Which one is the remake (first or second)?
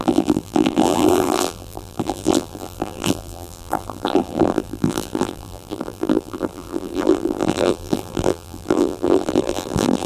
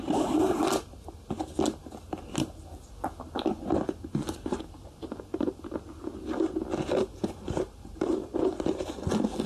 first